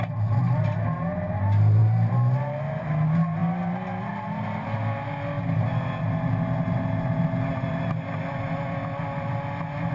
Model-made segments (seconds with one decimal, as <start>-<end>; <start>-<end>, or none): none